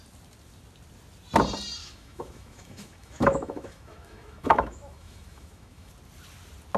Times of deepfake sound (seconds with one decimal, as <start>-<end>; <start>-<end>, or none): 1.8-5.9